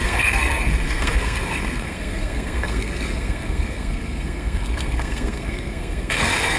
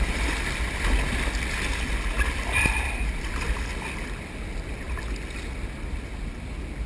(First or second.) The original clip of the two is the second